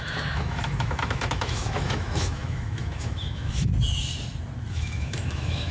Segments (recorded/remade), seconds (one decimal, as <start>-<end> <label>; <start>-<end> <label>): 0.0-3.7 remade; 3.7-4.7 recorded; 4.7-5.7 remade